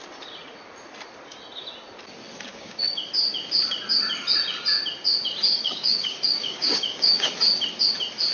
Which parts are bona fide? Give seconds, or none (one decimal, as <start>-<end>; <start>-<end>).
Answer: 0.0-2.5; 3.1-5.5; 7.3-8.3